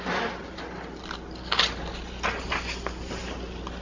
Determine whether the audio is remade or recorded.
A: recorded